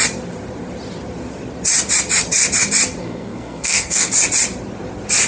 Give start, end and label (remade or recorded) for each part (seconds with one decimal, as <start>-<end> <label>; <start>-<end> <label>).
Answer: 0.0-3.0 recorded; 3.0-4.1 remade; 4.1-5.3 recorded